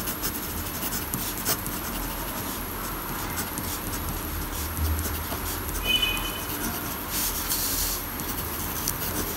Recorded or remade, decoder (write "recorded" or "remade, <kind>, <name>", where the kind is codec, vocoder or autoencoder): recorded